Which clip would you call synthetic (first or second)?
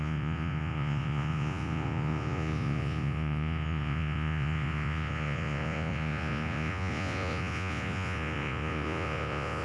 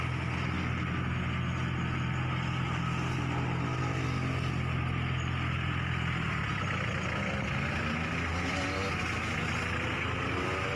first